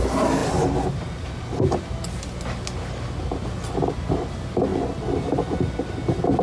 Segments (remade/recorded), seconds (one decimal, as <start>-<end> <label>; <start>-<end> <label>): 0.0-6.4 recorded